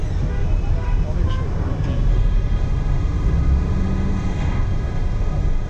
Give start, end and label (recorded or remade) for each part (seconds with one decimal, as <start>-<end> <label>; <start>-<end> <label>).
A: 0.0-2.1 recorded; 2.1-5.7 remade